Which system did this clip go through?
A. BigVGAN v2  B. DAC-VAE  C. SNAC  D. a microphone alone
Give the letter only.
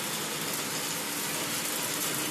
D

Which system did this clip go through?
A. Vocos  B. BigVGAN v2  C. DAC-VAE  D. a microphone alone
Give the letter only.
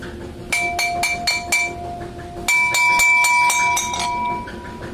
D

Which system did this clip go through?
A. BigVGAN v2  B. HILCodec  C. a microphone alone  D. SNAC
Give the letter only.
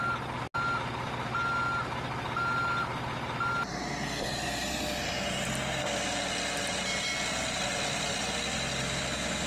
C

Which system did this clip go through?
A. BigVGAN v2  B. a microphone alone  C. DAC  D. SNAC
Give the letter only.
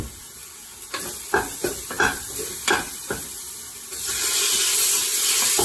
B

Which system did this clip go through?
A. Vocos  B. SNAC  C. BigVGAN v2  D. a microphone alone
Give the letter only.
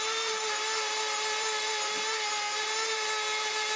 C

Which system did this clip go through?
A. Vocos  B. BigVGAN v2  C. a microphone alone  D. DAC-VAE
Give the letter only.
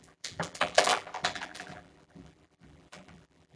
B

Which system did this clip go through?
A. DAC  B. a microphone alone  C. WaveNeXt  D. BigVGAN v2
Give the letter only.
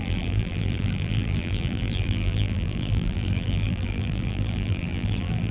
D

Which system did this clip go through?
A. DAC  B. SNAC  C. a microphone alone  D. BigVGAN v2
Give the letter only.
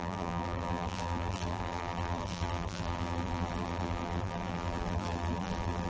D